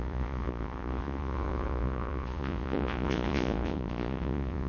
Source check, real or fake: fake